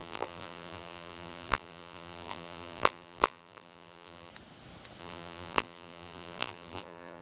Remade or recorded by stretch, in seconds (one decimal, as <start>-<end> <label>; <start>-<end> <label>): 0.0-4.3 remade; 4.3-5.0 recorded; 5.0-7.2 remade